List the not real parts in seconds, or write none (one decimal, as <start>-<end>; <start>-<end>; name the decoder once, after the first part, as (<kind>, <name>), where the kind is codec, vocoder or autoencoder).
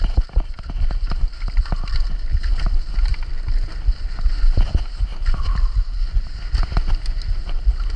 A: none